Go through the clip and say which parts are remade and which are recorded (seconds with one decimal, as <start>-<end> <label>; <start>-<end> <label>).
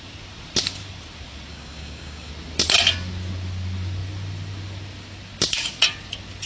0.0-1.5 recorded; 1.5-2.3 remade; 2.3-6.5 recorded